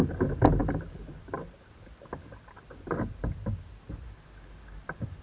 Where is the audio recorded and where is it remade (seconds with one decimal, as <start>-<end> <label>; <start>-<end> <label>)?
0.0-5.2 recorded